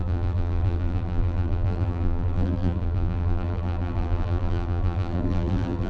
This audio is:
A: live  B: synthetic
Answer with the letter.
B